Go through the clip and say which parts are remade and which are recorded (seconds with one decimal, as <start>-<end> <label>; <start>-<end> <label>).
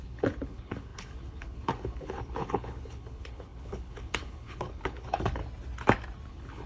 0.0-5.4 remade; 5.4-6.3 recorded; 6.3-6.7 remade